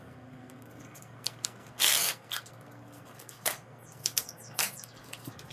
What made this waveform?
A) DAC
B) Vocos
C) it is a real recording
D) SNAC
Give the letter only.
D